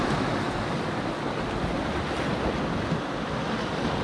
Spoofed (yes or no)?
no